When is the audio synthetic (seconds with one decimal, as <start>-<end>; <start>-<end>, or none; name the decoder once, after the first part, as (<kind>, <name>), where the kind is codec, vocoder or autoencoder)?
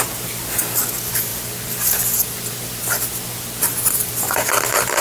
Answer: none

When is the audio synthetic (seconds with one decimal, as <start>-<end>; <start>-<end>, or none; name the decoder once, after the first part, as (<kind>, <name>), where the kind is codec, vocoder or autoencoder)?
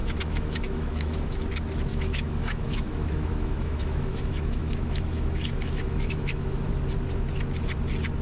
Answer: 0.0-1.4 (autoencoder, DAC-VAE); 1.9-6.7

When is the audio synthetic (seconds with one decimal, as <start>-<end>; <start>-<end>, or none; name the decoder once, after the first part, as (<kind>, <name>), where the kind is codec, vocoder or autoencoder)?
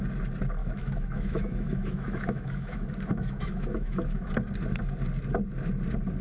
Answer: 0.6-4.3 (autoencoder, DAC-VAE)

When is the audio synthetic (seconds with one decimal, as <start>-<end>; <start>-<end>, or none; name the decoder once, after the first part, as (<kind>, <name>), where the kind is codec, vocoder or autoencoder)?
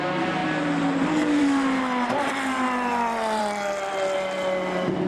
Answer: none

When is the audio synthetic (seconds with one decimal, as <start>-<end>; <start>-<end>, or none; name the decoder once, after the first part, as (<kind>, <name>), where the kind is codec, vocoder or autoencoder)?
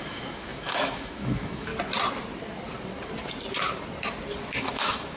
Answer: 0.0-1.7 (autoencoder, DAC-VAE); 4.6-5.2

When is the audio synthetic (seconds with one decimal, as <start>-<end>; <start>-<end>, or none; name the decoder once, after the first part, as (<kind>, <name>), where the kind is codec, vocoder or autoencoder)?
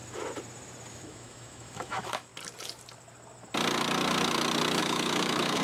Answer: 0.9-2.3 (autoencoder, DAC-VAE); 4.8-5.6